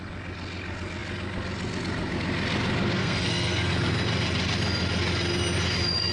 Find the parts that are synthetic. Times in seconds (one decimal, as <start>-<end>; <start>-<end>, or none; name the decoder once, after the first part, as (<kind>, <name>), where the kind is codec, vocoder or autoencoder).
3.0-3.7 (codec, SNAC)